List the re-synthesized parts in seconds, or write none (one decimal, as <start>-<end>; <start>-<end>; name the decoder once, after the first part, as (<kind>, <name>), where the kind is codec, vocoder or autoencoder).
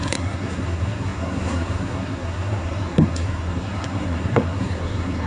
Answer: 0.0-5.3 (codec, SNAC)